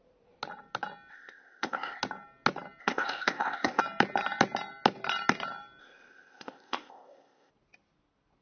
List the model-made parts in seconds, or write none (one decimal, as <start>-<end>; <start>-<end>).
1.1-2.0; 2.8-3.8; 5.8-7.5